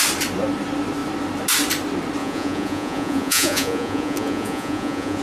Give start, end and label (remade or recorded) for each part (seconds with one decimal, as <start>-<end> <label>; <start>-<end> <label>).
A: 0.0-2.2 recorded; 2.2-5.2 remade